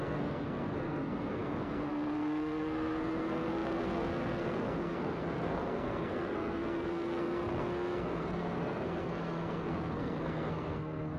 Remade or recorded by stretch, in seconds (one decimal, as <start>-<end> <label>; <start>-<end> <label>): 0.0-11.2 remade